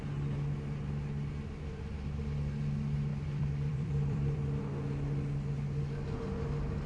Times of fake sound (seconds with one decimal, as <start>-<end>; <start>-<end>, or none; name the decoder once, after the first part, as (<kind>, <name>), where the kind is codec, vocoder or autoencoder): 3.1-4.6 (vocoder, BigVGAN v2)